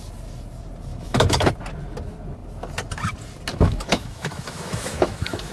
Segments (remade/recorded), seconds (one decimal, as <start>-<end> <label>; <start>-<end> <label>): 0.0-0.9 recorded; 0.9-1.5 remade; 1.5-3.5 recorded; 3.5-5.5 remade

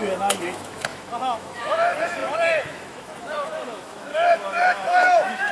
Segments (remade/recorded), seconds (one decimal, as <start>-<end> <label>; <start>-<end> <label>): 0.0-5.5 remade

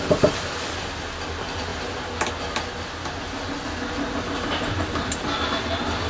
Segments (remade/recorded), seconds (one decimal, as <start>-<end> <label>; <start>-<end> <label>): 0.0-6.1 recorded

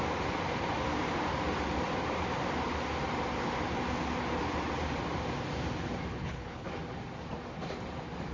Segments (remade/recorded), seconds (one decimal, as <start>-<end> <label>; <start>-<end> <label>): 0.0-6.1 recorded; 6.1-6.7 remade; 6.7-8.3 recorded

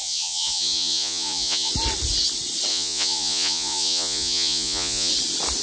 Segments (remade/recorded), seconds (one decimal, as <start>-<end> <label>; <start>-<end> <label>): 0.0-1.7 remade; 1.7-2.7 recorded; 2.7-5.1 remade; 5.1-5.6 recorded

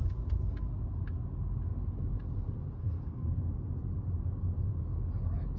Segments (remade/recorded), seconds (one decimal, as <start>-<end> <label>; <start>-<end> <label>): 0.0-2.8 recorded; 2.8-3.5 remade; 3.5-5.6 recorded